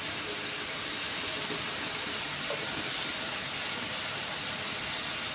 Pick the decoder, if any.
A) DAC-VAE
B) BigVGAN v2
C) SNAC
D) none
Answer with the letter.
B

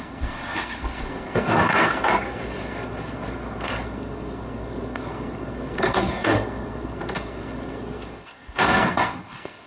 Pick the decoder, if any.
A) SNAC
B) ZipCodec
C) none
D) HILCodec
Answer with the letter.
A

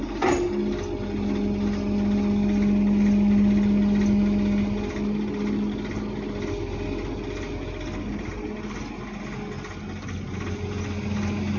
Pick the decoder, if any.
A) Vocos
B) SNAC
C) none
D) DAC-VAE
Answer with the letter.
C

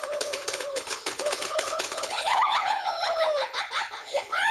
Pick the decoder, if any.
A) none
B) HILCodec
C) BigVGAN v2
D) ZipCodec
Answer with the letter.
B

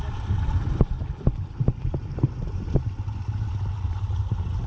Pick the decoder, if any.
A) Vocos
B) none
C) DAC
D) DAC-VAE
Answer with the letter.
B